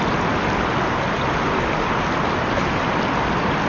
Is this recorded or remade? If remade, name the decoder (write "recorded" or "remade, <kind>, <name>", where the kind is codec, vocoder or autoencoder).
recorded